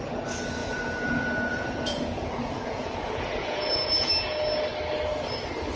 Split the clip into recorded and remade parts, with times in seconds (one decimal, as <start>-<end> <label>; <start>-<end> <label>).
0.0-0.6 recorded; 0.6-4.1 remade; 4.1-5.8 recorded